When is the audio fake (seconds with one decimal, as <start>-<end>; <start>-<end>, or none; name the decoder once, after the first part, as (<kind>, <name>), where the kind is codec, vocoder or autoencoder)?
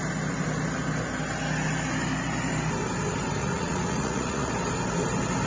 3.4-4.5 (vocoder, Vocos)